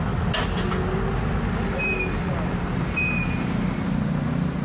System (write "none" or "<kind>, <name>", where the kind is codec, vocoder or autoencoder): none